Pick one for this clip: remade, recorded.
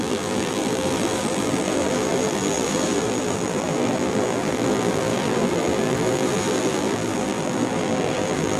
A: remade